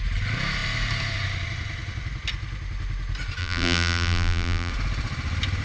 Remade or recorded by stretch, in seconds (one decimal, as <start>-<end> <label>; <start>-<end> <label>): 0.0-3.4 recorded; 3.4-4.7 remade; 4.7-5.6 recorded